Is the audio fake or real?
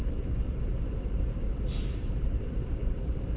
fake